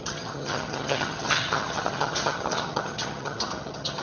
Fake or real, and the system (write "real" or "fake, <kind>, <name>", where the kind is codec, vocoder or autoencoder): fake, vocoder, HiFi-GAN